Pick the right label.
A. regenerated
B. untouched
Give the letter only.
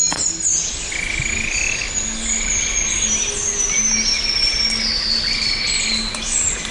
B